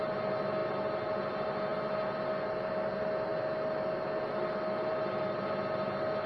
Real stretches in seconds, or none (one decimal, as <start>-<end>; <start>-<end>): 0.0-4.9; 5.4-6.3